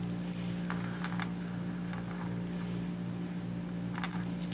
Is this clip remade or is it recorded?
recorded